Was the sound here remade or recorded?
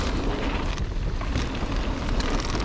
recorded